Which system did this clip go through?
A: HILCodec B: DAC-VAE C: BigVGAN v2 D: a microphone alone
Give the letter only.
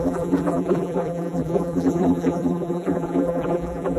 C